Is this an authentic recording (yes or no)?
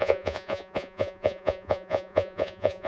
no